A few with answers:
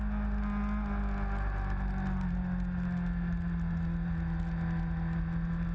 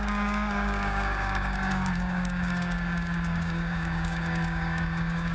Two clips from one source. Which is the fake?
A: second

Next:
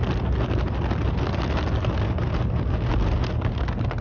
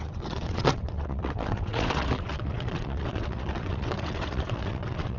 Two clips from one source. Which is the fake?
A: second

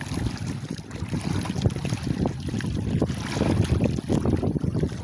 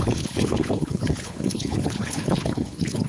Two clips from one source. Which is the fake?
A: second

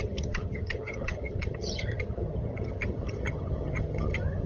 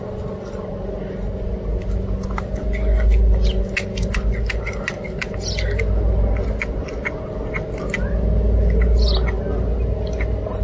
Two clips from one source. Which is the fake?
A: first